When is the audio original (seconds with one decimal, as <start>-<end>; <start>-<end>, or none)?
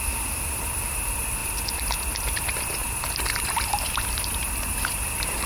1.4-2.3; 2.8-3.4